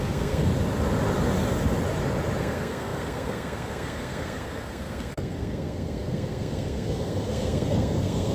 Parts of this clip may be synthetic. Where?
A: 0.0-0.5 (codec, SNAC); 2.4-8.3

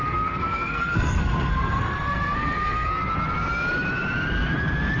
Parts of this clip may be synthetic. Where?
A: 0.0-3.0 (codec, SNAC)

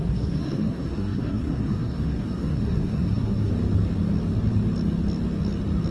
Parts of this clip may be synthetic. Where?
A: 0.0-3.5 (codec, SNAC)